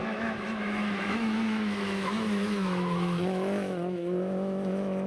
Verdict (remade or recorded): remade